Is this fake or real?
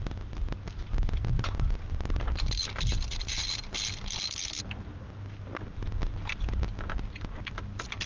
real